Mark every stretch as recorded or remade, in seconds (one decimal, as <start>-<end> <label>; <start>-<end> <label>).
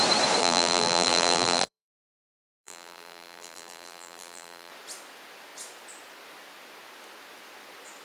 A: 0.0-0.4 recorded; 0.4-2.0 remade; 2.0-2.5 recorded; 2.5-4.7 remade; 4.7-8.0 recorded